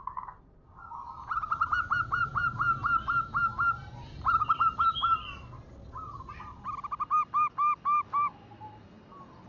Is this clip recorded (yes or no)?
yes